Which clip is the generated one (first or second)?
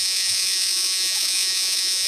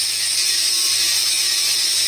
first